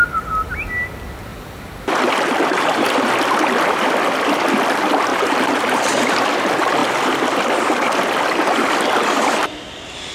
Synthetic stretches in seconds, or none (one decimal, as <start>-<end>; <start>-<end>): 5.1-5.8